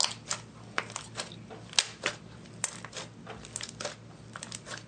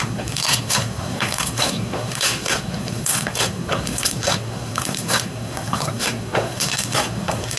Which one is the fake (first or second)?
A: second